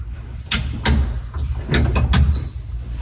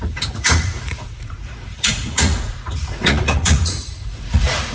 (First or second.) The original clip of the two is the first